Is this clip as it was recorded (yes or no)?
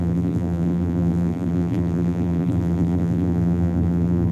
no